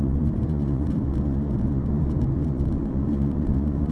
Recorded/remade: remade